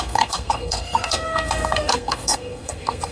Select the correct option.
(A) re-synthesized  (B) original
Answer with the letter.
A